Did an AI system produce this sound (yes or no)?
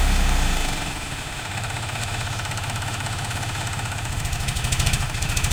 yes